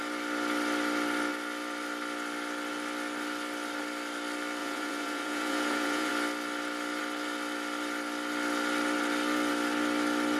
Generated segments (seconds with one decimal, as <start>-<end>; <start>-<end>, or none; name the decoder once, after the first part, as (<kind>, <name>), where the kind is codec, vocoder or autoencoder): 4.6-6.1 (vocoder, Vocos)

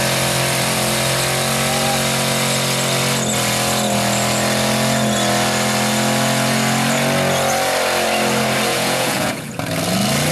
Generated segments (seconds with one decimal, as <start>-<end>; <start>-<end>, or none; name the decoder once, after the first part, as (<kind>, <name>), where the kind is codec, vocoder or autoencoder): 8.7-9.5 (vocoder, Vocos)

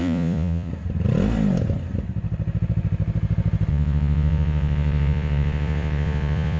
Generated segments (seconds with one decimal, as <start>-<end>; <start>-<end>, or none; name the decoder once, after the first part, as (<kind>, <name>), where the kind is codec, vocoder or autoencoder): 0.0-0.7 (vocoder, Vocos); 3.7-6.6

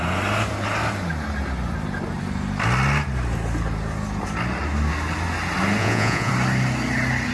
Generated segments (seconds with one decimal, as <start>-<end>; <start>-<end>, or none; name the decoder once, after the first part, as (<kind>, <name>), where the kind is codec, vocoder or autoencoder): 5.8-6.3 (vocoder, Vocos)

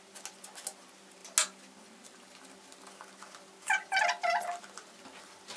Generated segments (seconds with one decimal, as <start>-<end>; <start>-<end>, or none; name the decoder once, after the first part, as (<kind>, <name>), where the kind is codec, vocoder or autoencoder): none